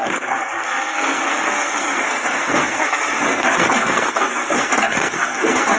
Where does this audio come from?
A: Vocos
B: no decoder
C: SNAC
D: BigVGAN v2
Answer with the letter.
C